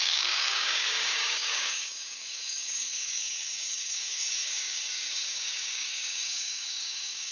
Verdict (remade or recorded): remade